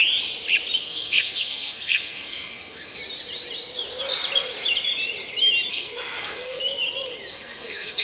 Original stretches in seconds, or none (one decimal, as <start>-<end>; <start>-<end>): 0.0-0.8; 3.0-5.7; 6.6-7.3